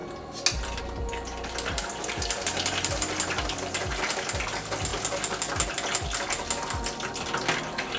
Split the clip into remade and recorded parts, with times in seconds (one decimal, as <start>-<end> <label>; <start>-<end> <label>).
0.0-8.0 recorded